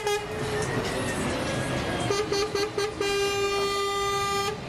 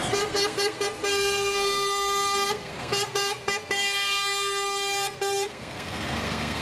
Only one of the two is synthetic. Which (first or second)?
second